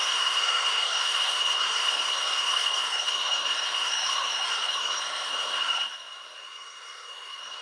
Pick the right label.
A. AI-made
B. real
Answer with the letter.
A